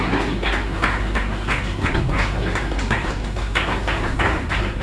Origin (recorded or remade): remade